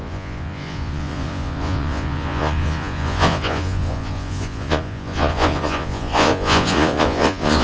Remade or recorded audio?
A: remade